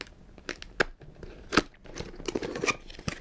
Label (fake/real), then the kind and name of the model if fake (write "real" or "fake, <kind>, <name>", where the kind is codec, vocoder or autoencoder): real